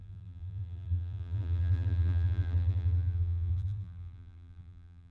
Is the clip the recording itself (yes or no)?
no